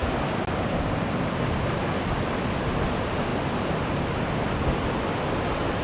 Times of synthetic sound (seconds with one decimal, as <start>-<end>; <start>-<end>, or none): none